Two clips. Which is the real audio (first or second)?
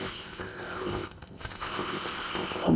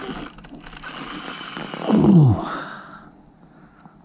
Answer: second